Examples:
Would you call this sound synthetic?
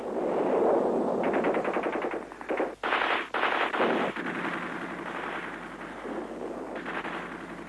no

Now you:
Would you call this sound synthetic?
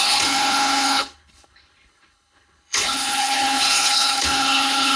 yes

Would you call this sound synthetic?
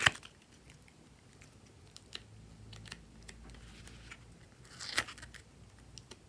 no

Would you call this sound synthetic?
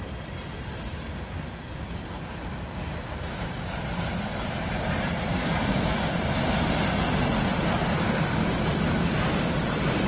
no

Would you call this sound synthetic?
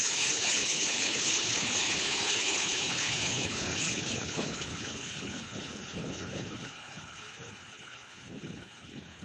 yes